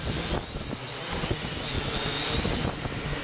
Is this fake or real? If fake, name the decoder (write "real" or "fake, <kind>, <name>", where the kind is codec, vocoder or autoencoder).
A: real